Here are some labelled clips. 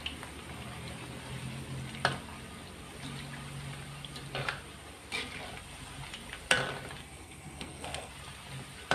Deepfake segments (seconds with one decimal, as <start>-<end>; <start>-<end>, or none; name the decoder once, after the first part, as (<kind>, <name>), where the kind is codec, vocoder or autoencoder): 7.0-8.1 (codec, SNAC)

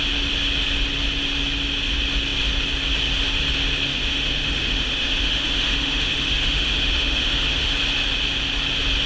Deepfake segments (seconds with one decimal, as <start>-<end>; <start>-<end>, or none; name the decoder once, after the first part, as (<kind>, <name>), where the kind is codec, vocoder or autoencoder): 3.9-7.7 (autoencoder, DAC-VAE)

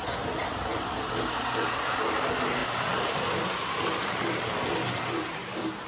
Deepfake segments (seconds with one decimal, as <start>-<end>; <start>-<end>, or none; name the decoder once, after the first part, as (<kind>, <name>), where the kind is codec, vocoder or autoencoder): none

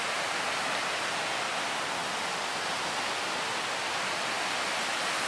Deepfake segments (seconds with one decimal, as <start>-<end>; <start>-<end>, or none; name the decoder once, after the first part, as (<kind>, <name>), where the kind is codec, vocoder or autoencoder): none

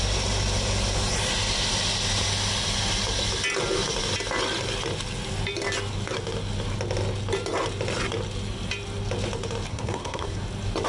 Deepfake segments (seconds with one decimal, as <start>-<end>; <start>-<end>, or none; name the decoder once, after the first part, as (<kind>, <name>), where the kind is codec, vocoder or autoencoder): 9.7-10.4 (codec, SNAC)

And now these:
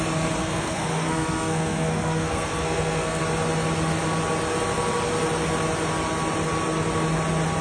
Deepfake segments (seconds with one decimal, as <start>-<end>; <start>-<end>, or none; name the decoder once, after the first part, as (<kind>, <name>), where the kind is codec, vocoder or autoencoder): 0.4-3.2 (codec, SNAC)